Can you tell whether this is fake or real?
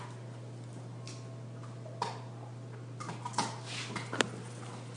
real